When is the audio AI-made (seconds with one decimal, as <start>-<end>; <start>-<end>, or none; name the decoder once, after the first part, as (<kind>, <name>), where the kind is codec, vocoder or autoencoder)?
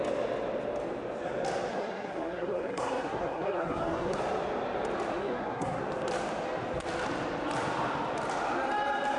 1.7-4.2 (codec, SNAC); 5.1-5.8